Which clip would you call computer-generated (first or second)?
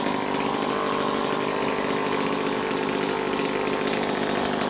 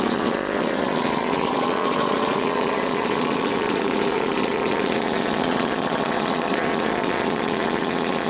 second